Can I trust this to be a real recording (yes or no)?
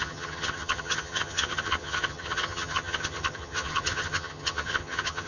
no